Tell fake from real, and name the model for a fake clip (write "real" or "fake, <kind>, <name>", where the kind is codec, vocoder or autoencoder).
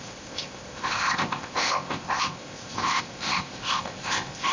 fake, codec, ZipCodec